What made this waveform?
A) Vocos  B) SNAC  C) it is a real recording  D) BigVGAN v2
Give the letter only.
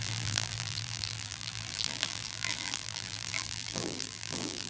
D